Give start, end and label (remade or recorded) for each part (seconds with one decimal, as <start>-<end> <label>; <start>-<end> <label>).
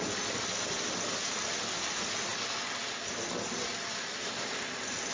0.0-5.1 recorded